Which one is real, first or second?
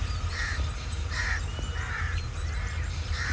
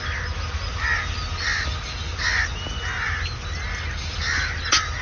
second